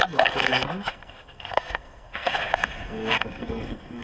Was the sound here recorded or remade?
remade